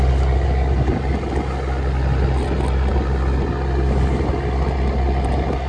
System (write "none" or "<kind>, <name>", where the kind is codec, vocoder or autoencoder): none